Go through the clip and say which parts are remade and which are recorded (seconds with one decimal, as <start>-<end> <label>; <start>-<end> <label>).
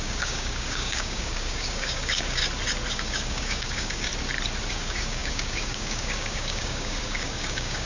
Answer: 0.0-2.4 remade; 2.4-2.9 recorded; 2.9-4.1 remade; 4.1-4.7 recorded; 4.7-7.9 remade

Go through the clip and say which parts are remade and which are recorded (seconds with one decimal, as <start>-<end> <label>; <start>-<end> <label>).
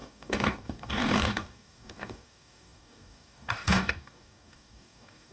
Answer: 0.0-5.3 remade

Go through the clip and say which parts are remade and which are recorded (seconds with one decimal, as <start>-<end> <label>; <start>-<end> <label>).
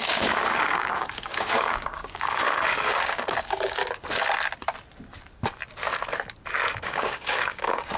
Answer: 0.0-3.8 remade; 3.8-6.8 recorded; 6.8-8.0 remade